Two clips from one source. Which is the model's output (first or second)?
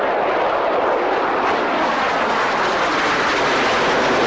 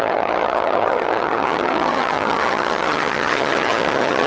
second